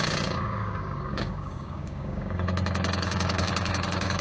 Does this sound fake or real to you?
fake